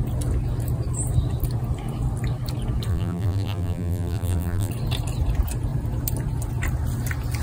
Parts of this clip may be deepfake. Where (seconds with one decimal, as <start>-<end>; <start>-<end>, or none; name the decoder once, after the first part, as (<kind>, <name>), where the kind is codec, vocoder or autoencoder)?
2.9-4.7 (vocoder, BigVGAN v2)